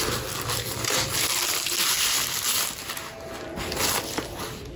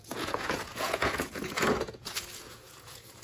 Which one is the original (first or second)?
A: first